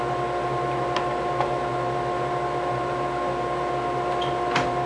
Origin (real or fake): real